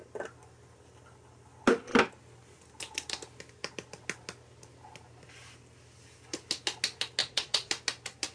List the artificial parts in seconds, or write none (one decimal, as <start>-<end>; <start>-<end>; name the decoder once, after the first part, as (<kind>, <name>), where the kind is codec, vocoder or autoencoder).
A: 7.2-7.7 (vocoder, Vocos)